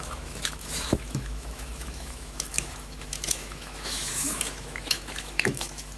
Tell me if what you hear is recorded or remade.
remade